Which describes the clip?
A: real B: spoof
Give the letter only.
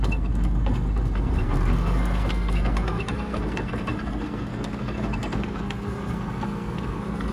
B